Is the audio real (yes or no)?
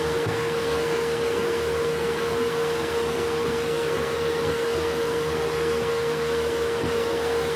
no